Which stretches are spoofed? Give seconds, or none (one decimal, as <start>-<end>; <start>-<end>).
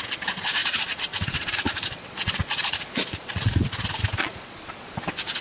0.6-3.7; 4.2-5.0